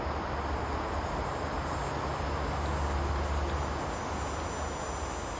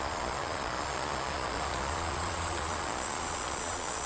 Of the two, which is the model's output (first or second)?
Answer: second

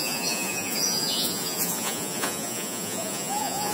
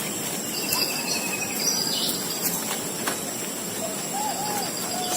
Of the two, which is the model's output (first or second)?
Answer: first